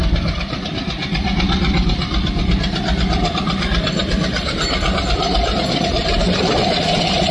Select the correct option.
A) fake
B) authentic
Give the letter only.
A